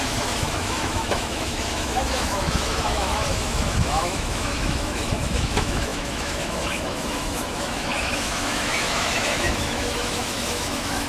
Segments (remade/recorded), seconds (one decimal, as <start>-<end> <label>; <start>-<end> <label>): 0.0-11.1 remade